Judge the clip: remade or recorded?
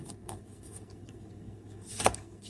remade